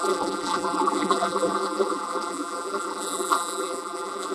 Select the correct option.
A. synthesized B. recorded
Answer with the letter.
A